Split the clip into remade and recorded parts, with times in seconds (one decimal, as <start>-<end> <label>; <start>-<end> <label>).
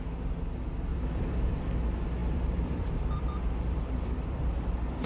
0.0-0.9 recorded; 0.9-1.6 remade; 1.6-2.2 recorded; 2.2-4.5 remade; 4.5-5.1 recorded